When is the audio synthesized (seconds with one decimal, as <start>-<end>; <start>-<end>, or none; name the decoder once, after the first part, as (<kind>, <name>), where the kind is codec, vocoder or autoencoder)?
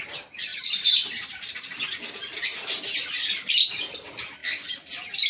none